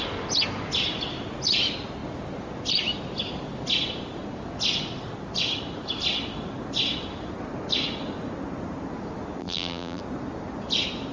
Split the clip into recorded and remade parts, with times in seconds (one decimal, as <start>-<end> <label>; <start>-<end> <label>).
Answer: 0.0-9.4 recorded; 9.4-10.0 remade; 10.0-11.1 recorded